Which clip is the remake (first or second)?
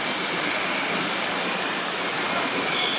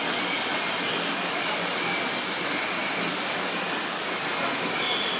first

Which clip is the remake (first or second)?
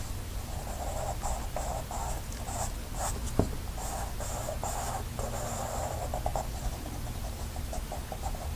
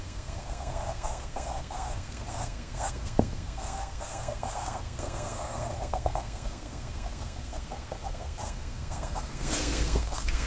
second